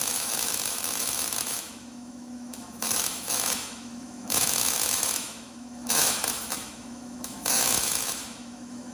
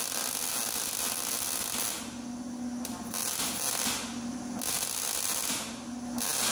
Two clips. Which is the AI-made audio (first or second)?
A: first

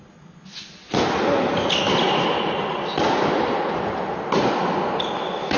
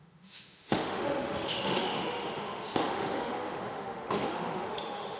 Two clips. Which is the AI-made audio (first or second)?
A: second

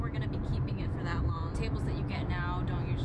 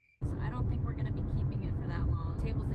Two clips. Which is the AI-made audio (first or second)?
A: second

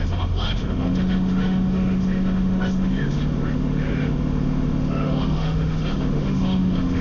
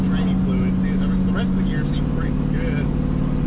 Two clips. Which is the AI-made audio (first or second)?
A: first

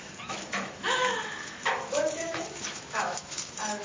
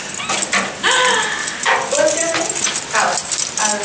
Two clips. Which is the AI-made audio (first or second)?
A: first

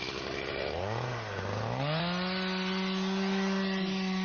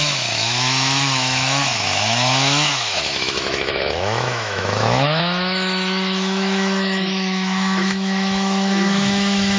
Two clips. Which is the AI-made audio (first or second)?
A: second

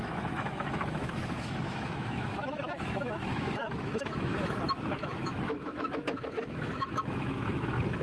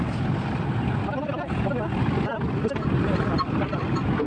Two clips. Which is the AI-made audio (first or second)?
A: first